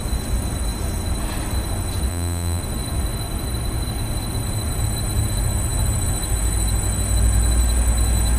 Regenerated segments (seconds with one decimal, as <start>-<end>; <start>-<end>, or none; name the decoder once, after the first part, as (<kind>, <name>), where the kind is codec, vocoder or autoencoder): 2.1-2.6 (vocoder, BigVGAN v2)